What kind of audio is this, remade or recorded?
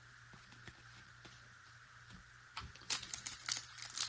recorded